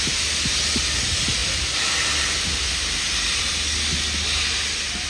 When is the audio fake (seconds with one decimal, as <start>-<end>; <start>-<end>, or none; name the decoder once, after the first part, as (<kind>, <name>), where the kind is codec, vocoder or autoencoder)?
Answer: none